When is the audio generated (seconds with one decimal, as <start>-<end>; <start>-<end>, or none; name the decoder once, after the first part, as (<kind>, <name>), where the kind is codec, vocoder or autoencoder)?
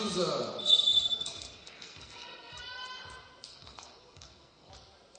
0.6-2.6 (codec, SNAC); 3.5-4.7